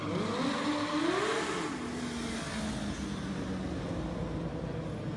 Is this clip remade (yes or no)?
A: no